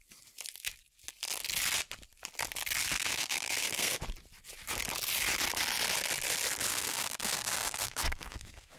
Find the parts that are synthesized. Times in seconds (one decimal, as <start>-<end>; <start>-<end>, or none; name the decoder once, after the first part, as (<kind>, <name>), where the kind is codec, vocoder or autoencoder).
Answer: 2.8-4.0 (codec, SNAC); 6.7-8.8